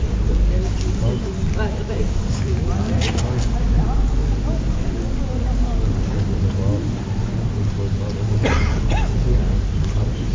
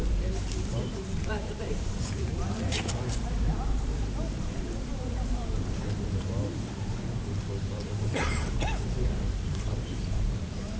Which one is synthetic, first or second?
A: second